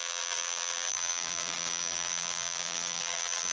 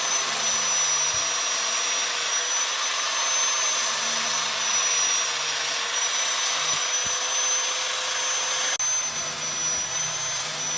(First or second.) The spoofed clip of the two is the first